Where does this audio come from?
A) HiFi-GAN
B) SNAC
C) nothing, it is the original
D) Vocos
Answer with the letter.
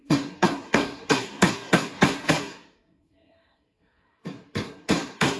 B